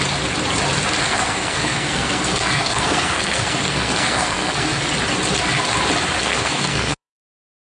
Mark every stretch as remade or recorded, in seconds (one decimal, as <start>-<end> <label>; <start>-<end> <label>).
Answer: 0.0-1.0 recorded; 1.0-4.8 remade; 4.8-6.2 recorded; 6.2-7.6 remade